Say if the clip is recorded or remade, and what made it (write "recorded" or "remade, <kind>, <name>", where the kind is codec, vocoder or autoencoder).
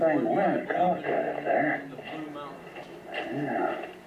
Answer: recorded